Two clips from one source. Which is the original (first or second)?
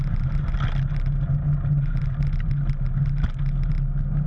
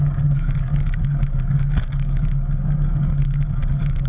first